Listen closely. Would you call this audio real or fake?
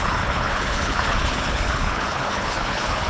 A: fake